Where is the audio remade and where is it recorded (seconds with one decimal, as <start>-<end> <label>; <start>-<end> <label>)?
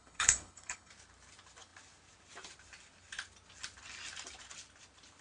0.0-0.9 remade; 0.9-5.2 recorded